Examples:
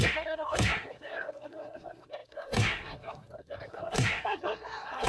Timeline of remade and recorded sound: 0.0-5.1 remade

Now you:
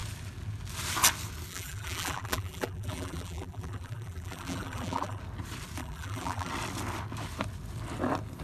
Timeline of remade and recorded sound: 0.0-1.5 recorded; 1.5-5.2 remade; 5.2-5.8 recorded; 5.8-6.5 remade; 6.5-8.4 recorded

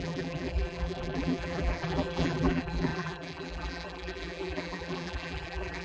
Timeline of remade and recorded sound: 0.0-5.8 remade